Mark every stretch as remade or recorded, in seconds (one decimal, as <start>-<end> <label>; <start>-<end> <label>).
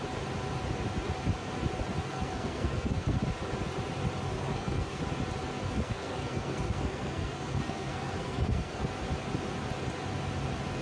0.0-2.0 recorded; 2.0-3.2 remade; 3.2-4.3 recorded; 4.3-5.0 remade; 5.0-5.6 recorded; 5.6-8.9 remade; 8.9-10.8 recorded